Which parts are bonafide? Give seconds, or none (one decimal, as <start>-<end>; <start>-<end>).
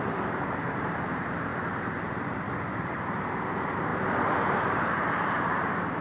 1.5-2.7